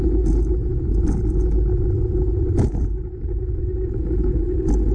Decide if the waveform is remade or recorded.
recorded